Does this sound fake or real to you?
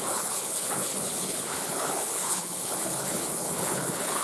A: fake